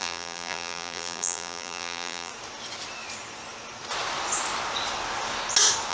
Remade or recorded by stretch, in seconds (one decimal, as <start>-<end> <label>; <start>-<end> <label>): 0.0-2.3 remade; 2.3-5.9 recorded